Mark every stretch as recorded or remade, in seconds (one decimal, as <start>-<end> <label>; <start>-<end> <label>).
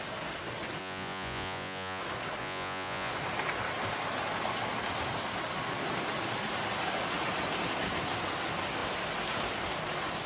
0.0-0.8 recorded; 0.8-2.0 remade; 2.0-2.4 recorded; 2.4-3.1 remade; 3.1-10.3 recorded